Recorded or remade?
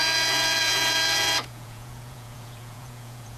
remade